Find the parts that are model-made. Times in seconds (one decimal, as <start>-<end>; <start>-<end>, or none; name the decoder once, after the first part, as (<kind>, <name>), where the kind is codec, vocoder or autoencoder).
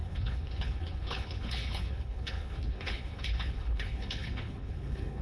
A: 0.0-5.2 (codec, HILCodec)